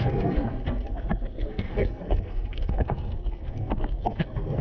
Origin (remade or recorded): remade